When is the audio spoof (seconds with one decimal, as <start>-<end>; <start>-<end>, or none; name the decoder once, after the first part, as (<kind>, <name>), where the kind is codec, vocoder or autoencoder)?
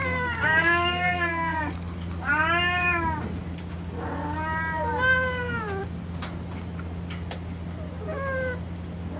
0.0-1.6 (codec, SNAC)